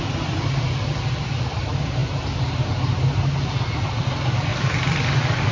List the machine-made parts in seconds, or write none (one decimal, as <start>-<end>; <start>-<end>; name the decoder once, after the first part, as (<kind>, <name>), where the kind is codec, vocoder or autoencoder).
none